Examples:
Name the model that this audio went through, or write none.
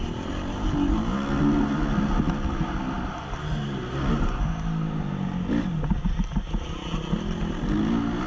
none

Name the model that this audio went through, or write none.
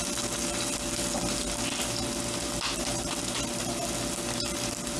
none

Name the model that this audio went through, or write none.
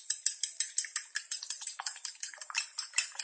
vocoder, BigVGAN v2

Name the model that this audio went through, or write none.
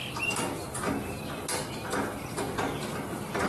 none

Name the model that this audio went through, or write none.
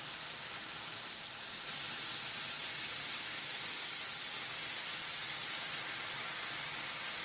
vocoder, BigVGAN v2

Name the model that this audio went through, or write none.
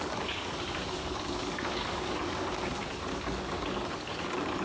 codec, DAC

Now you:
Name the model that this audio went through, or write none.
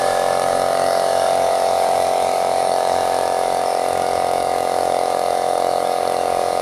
codec, DAC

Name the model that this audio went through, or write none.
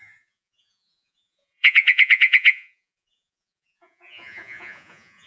vocoder, Vocos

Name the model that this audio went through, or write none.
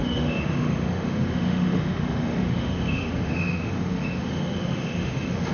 autoencoder, DAC-VAE